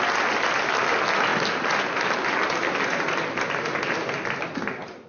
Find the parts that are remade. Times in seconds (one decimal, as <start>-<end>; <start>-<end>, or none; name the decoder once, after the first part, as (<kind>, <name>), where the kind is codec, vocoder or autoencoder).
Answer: none